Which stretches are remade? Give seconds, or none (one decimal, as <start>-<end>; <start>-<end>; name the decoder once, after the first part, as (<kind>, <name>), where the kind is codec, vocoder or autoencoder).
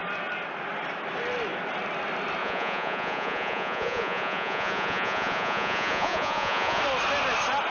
2.4-6.8 (vocoder, Vocos)